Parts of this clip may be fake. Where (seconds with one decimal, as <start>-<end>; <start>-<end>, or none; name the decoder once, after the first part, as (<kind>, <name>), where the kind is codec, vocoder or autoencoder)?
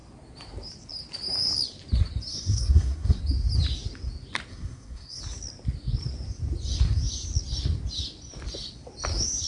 2.3-3.2 (codec, SNAC); 4.5-5.2